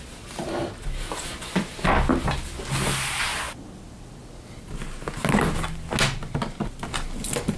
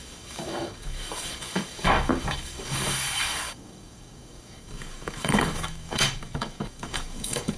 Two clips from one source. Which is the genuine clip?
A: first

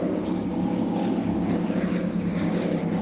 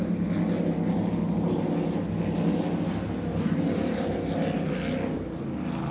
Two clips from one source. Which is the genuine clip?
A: second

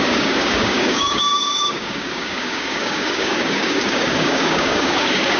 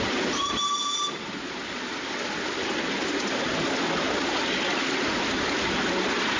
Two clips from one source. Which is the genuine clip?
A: second